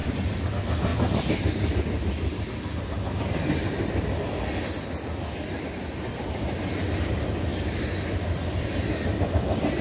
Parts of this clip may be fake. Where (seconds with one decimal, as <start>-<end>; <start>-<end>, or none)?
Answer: 0.0-0.9; 5.6-9.8